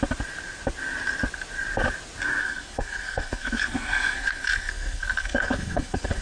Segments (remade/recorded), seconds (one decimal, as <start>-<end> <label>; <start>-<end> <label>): 0.0-2.4 recorded; 2.4-6.2 remade